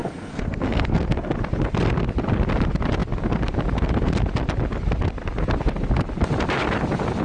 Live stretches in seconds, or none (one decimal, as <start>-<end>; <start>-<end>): 1.3-7.2